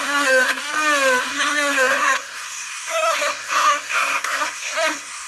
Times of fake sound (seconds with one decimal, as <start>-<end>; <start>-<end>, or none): 0.0-0.6; 1.2-5.3